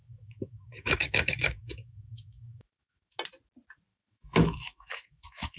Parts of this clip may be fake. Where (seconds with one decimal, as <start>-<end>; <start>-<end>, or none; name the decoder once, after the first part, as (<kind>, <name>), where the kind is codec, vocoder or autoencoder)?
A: 0.0-3.2 (autoencoder, DAC-VAE); 3.9-5.6